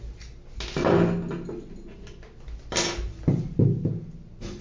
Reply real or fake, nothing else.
real